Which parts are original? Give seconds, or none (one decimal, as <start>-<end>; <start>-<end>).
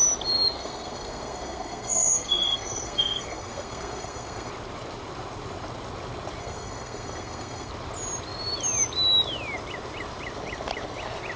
0.0-0.6; 4.5-6.4; 7.7-11.4